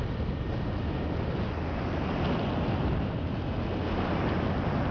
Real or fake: real